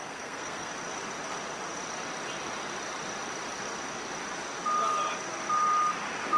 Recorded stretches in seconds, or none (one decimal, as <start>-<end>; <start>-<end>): 0.7-6.4

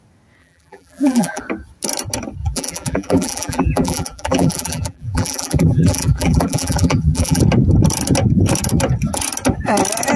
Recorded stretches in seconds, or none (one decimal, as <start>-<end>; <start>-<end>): 0.0-0.4; 1.4-2.4; 7.4-10.2

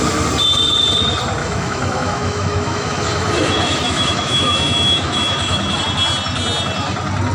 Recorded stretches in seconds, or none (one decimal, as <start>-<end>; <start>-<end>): 0.0-1.4; 5.8-7.3

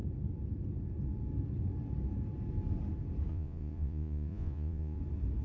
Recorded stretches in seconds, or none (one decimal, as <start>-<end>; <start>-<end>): 0.0-3.3; 5.0-5.4

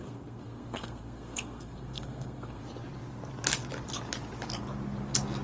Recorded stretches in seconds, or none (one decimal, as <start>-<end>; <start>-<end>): 2.6-5.4